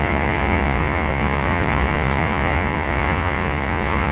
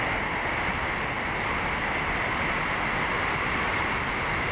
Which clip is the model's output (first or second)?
first